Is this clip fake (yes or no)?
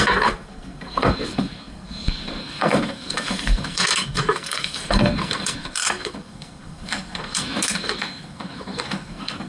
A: yes